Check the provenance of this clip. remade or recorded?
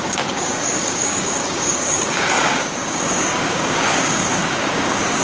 remade